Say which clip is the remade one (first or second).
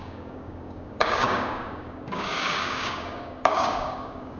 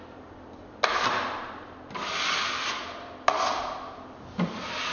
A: first